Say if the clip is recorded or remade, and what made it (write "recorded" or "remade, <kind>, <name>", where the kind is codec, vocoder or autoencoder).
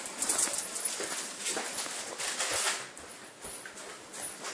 recorded